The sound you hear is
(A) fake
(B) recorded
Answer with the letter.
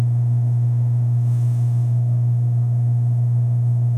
A